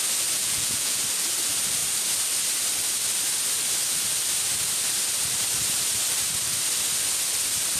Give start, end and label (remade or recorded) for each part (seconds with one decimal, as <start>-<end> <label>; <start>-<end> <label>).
0.0-0.4 recorded; 0.4-1.0 remade; 1.0-7.8 recorded